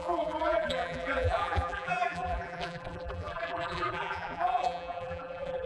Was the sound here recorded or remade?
remade